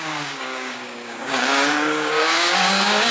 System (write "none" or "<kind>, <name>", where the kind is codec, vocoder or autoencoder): codec, DAC